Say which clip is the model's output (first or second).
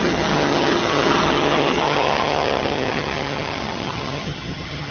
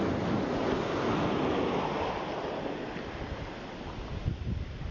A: first